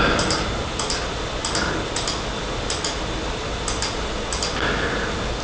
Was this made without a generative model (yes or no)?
yes